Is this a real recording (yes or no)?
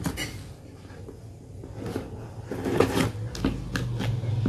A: yes